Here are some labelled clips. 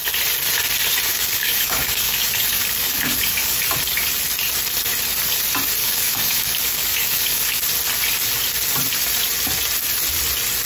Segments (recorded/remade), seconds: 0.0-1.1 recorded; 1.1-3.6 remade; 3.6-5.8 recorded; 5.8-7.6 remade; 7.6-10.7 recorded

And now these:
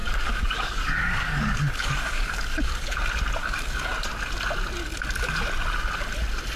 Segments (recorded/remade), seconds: 0.0-3.0 remade; 3.0-3.4 recorded; 3.4-3.9 remade; 3.9-6.6 recorded

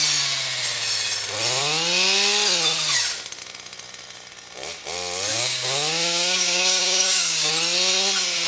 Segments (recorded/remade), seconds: 0.0-5.3 recorded; 5.3-7.5 remade; 7.5-8.5 recorded

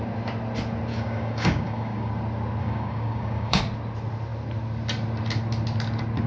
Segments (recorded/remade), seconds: 0.0-0.9 recorded; 0.9-2.1 remade; 2.1-2.6 recorded; 2.6-3.6 remade; 3.6-6.3 recorded

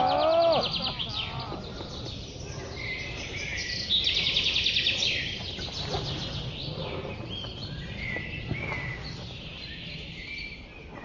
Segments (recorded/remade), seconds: 0.0-11.0 recorded